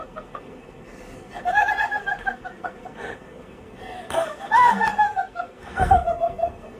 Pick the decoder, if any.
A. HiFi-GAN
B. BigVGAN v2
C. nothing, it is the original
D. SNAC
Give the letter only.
D